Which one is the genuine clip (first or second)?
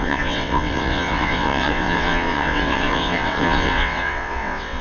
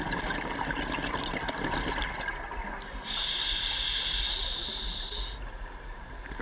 second